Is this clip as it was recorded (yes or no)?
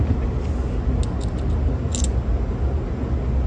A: yes